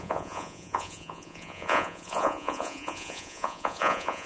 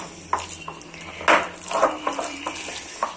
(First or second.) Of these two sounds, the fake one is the first